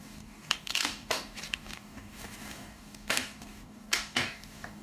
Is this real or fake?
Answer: fake